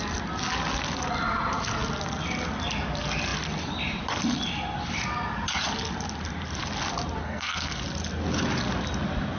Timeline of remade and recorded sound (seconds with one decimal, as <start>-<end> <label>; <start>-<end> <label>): 0.0-7.2 recorded; 7.2-7.8 remade; 7.8-9.4 recorded